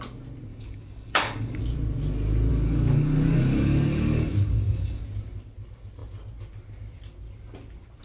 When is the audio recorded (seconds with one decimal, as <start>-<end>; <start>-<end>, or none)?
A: 0.0-0.5; 1.6-2.5; 5.0-8.0